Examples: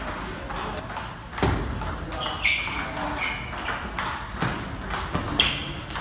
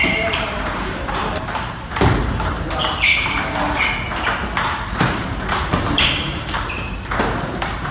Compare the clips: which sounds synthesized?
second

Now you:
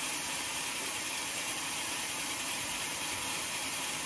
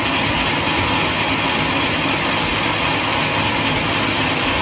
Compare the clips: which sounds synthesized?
first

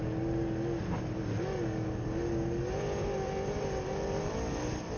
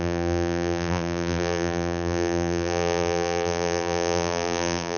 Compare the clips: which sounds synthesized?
second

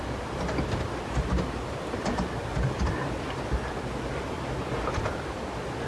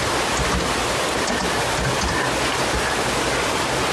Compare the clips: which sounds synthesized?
first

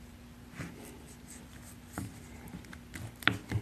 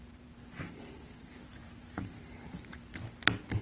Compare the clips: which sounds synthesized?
second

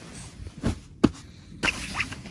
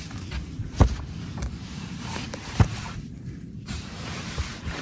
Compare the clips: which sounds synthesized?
second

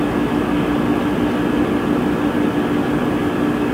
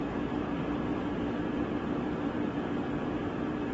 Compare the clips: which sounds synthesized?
second